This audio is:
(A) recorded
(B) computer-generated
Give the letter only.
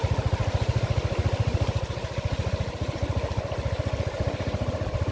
A